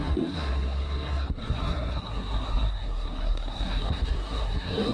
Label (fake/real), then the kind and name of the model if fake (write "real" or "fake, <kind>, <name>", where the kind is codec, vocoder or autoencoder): fake, codec, SNAC